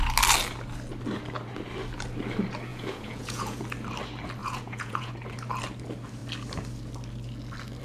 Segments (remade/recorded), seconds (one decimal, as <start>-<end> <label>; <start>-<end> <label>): 0.0-2.7 recorded; 2.7-3.6 remade; 3.6-4.4 recorded; 4.4-5.1 remade; 5.1-7.8 recorded